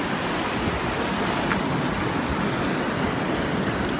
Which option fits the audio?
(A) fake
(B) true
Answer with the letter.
B